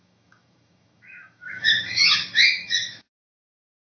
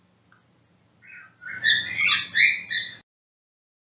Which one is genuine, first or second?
second